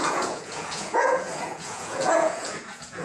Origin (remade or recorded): remade